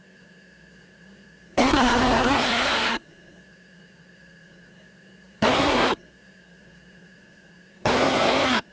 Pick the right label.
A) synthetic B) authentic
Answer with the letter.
A